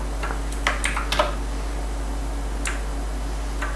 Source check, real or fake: real